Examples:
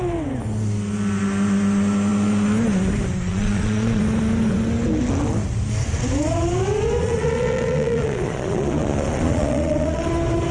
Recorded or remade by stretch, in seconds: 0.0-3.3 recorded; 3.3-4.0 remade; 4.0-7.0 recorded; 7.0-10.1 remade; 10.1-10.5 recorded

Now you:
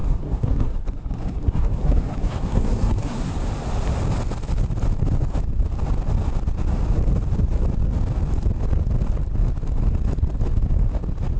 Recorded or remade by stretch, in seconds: 0.0-3.3 remade; 3.3-11.4 recorded

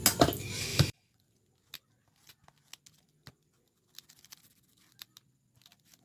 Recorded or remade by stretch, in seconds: 0.0-0.7 recorded; 0.7-1.4 remade; 1.4-6.0 recorded

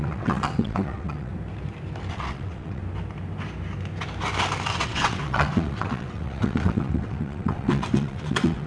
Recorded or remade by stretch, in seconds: 0.0-1.3 remade; 1.3-2.1 recorded; 2.1-2.8 remade; 2.8-4.7 recorded; 4.7-8.7 remade